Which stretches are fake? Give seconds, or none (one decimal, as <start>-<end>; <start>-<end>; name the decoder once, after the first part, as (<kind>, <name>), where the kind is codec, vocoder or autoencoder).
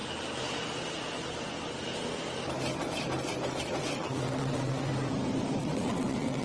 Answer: 3.8-4.9 (vocoder, WaveNeXt); 5.6-6.4